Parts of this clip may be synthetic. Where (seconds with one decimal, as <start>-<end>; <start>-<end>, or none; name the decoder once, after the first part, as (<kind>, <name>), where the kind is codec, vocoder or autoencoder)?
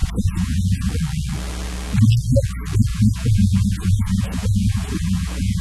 0.0-0.9 (vocoder, Vocos); 2.9-5.6